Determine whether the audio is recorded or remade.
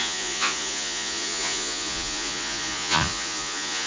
remade